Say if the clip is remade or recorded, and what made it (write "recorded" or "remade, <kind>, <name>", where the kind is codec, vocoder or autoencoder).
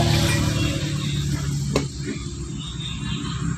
recorded